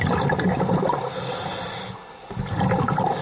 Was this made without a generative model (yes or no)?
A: yes